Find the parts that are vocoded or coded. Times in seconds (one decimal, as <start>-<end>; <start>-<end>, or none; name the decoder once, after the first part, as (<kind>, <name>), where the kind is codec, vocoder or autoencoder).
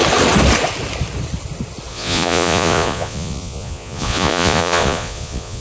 1.9-5.6 (vocoder, Vocos)